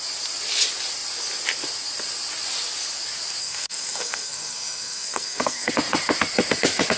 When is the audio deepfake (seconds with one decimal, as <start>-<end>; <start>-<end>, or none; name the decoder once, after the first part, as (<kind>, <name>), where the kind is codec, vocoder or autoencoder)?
3.4-5.7 (codec, SNAC)